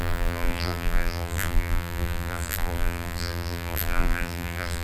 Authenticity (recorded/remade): remade